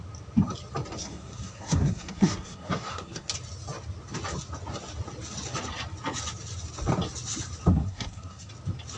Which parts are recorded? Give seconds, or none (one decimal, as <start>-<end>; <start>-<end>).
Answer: 0.0-1.0; 3.3-7.7; 8.5-9.0